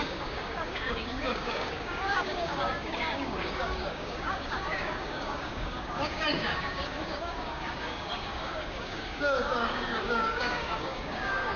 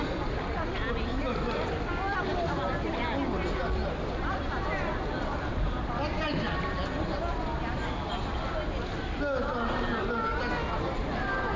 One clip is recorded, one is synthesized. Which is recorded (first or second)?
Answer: second